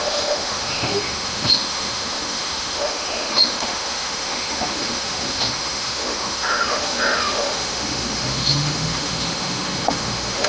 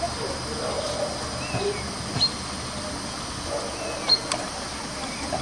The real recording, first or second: second